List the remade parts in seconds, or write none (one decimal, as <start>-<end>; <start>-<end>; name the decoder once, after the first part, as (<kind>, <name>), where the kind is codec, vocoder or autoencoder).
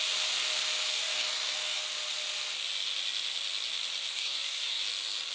0.9-1.8 (codec, DAC); 4.1-4.8